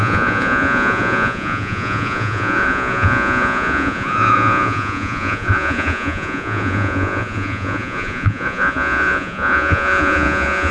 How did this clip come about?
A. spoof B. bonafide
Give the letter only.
A